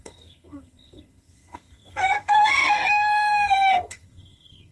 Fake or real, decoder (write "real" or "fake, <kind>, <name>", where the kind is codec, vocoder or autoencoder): fake, codec, SNAC